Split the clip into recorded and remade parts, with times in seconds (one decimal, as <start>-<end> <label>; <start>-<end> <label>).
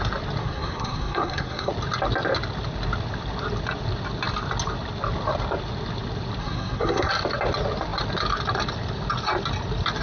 0.0-0.4 recorded; 0.4-1.7 remade; 1.7-6.4 recorded; 6.4-7.1 remade; 7.1-10.0 recorded